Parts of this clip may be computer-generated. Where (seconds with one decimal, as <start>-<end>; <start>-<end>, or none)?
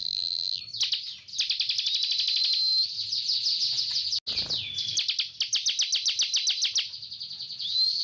0.0-0.6